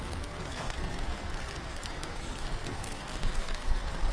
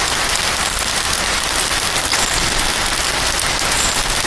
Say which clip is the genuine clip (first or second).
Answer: second